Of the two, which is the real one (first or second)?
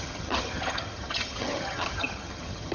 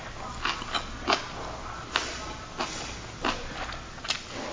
second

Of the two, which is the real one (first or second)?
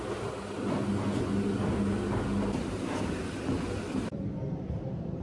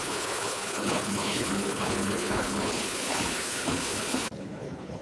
first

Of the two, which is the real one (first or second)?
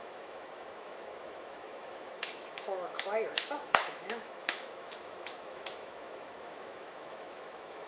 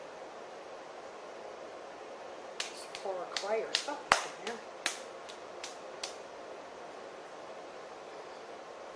second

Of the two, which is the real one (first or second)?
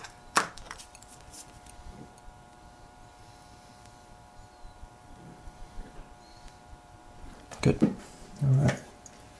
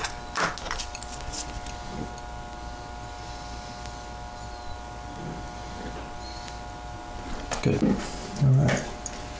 second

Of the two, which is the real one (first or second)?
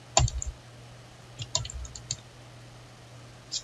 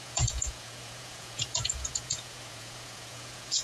first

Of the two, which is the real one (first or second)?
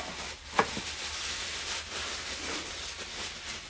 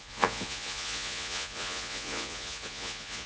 first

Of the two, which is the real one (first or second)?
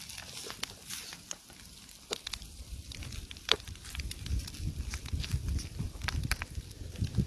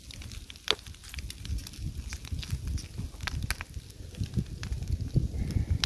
second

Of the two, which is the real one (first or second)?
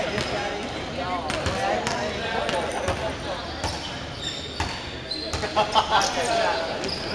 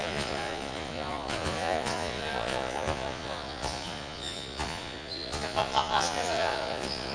first